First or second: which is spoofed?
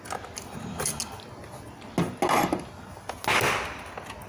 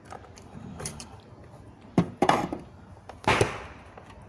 second